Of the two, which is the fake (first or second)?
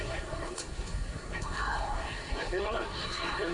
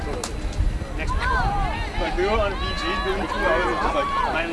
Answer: first